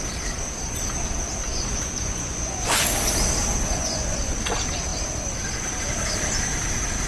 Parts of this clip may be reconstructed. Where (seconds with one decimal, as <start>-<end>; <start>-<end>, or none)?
1.5-2.8; 3.7-4.4